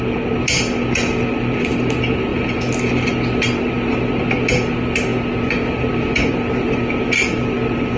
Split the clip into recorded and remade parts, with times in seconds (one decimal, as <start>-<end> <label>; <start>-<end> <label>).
0.0-8.0 recorded